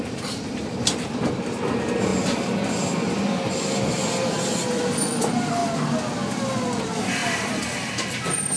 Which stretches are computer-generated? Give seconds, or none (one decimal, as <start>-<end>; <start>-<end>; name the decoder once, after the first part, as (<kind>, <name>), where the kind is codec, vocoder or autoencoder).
0.0-5.6 (vocoder, BigVGAN v2); 6.8-8.6